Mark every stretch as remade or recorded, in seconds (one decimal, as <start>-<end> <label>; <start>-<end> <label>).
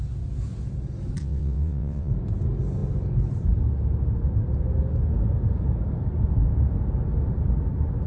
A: 0.0-1.2 recorded; 1.2-2.1 remade; 2.1-8.1 recorded